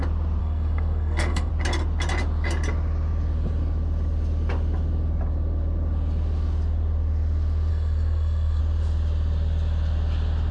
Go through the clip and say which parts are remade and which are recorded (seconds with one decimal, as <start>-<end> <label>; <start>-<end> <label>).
0.0-0.4 recorded; 0.4-1.5 remade; 1.5-7.7 recorded; 7.7-8.6 remade; 8.6-10.5 recorded